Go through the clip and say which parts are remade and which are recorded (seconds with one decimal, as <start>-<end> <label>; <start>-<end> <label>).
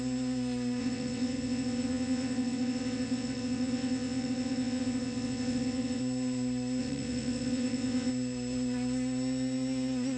0.0-0.8 recorded; 0.8-6.0 remade; 6.0-6.8 recorded; 6.8-8.1 remade; 8.1-10.2 recorded